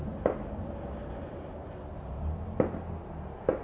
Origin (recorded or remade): recorded